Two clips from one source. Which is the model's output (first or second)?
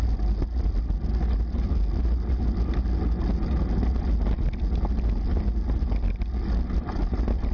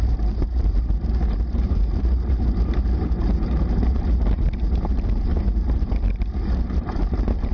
second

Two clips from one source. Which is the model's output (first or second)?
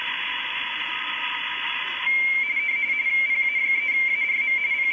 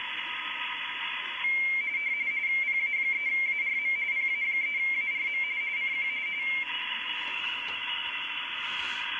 first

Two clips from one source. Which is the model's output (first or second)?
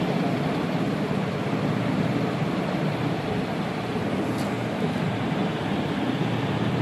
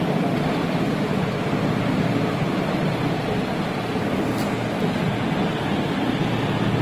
first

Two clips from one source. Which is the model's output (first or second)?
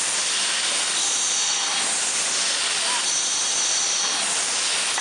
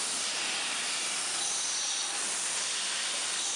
second